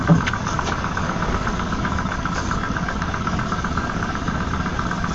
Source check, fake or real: fake